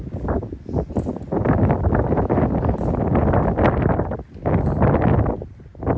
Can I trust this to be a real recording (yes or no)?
yes